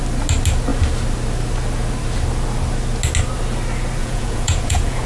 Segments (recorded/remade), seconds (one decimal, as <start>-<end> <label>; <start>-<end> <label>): 0.0-4.0 recorded; 4.0-5.1 remade